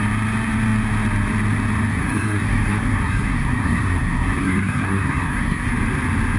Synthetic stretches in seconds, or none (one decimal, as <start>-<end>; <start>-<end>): 1.9-5.7